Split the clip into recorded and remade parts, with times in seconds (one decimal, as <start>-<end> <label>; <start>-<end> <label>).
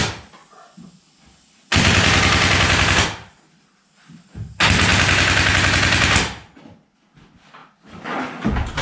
0.0-8.8 recorded